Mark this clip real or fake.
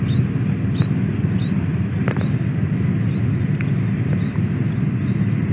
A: real